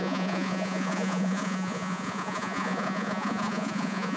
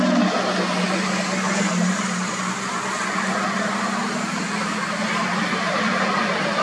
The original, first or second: second